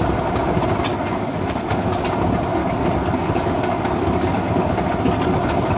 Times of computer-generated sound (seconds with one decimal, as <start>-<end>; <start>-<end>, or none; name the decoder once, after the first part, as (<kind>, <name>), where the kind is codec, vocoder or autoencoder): 0.9-1.9 (codec, DAC); 2.6-5.8